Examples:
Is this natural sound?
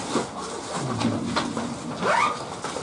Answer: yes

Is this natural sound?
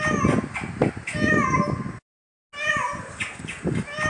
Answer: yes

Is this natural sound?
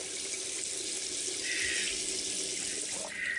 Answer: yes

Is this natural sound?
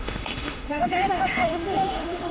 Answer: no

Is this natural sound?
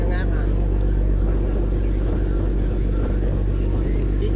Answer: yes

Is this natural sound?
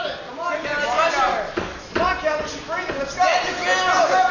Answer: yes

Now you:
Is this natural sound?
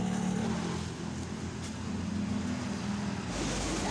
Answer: yes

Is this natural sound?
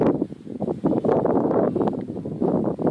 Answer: yes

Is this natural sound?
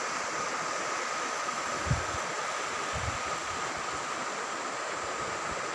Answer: yes